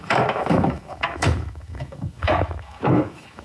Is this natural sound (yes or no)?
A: no